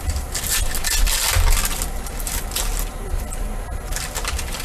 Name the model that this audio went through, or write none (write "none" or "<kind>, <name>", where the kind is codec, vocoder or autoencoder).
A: none